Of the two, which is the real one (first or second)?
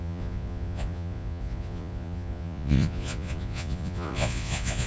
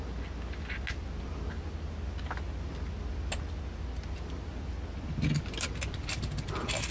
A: second